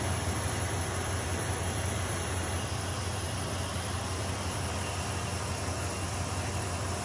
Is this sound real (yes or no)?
yes